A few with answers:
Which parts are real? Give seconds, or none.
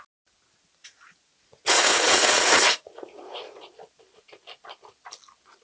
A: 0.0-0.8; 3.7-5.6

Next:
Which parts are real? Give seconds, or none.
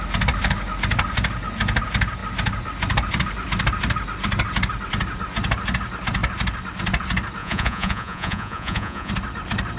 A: 0.0-7.4; 9.1-9.8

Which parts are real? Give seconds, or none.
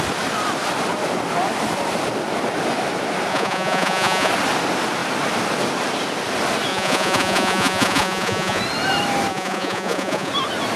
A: 0.0-3.3; 4.3-6.7; 8.6-9.3; 10.3-10.8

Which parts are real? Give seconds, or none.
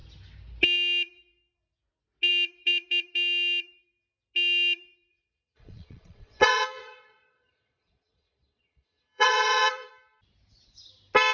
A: 0.0-5.1; 9.9-11.3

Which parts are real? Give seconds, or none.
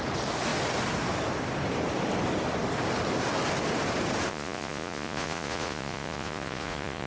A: 0.0-4.3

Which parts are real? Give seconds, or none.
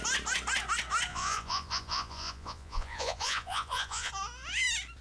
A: 0.0-1.1; 4.1-5.0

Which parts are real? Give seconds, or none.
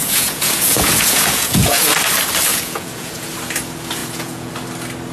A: 1.9-2.5; 3.3-4.0; 4.5-5.1